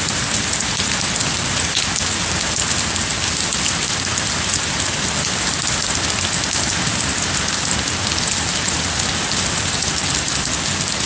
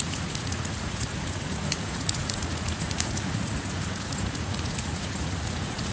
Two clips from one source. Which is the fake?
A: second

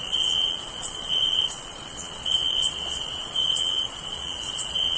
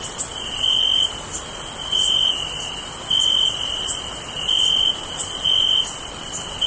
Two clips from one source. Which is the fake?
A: first